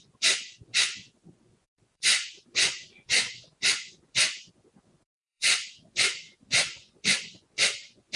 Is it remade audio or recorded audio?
remade